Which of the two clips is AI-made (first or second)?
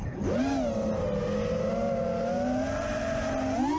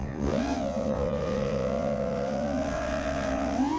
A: second